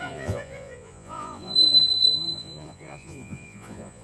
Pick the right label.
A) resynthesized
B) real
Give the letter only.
A